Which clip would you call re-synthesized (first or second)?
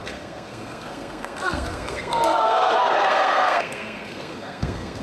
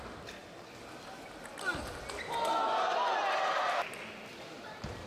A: first